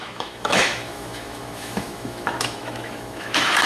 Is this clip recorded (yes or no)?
no